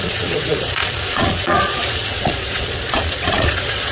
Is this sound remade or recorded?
remade